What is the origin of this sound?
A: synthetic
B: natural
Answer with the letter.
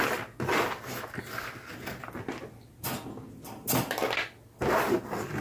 B